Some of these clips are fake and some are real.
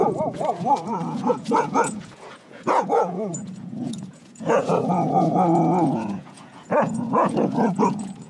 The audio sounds fake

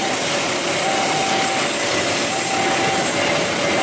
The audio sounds real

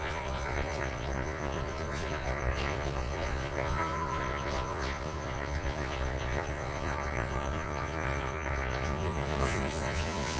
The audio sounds fake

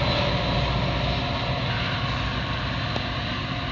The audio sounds real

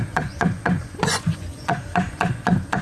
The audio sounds fake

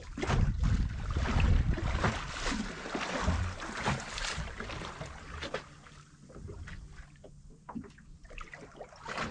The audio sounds real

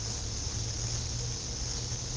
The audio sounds real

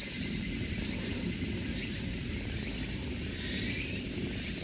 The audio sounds real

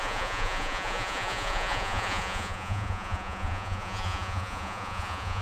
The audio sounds fake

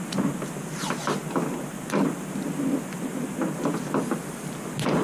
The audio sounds real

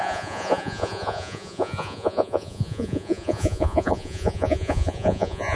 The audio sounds fake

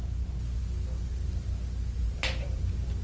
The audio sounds real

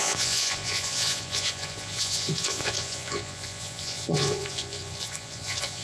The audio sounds fake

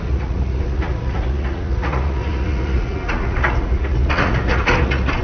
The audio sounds fake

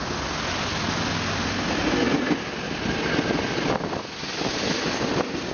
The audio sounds real